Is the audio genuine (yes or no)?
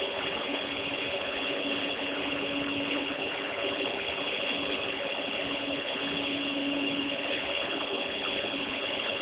no